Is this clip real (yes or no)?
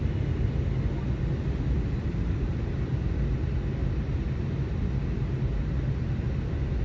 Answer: yes